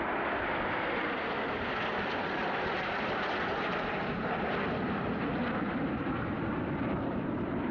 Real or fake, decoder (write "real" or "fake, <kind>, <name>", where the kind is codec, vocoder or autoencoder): real